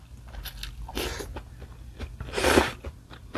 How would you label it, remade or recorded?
recorded